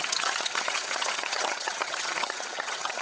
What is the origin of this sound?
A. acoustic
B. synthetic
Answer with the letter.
B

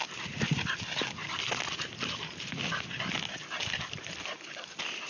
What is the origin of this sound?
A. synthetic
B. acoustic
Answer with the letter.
B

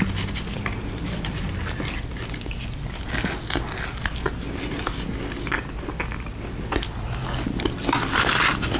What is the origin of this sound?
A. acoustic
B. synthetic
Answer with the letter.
A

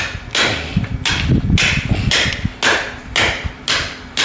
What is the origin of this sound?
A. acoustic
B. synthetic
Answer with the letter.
A